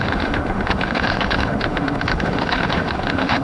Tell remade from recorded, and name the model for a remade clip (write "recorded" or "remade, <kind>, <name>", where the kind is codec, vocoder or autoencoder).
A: remade, autoencoder, DAC-VAE